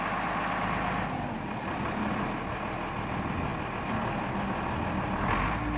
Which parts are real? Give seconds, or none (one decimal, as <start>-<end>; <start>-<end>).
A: 0.0-5.8